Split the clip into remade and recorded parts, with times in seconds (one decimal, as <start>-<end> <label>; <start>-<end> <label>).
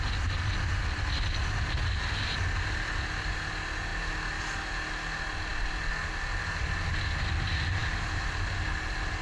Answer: 0.0-9.2 recorded